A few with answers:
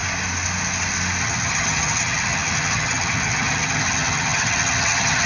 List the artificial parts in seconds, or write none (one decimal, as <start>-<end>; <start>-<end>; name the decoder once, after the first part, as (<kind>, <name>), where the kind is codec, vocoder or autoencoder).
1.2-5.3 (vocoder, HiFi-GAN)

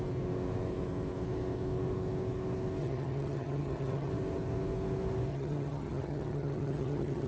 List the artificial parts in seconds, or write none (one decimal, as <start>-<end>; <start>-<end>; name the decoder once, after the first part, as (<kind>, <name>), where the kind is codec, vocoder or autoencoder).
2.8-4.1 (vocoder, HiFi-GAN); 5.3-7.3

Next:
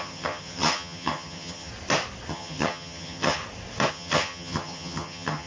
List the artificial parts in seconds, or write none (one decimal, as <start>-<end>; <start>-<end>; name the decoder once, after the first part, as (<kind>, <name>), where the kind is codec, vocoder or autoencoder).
0.0-1.7 (vocoder, HiFi-GAN); 2.3-3.4; 3.9-5.5

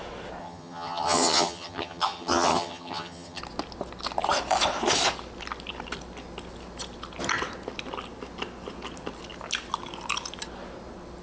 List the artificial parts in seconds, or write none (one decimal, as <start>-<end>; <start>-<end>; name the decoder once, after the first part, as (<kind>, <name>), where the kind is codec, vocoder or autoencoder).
0.4-3.4 (vocoder, HiFi-GAN)

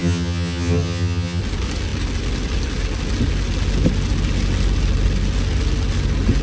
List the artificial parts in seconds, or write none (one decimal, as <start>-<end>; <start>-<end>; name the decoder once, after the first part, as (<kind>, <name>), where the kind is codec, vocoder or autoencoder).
0.0-1.4 (vocoder, HiFi-GAN)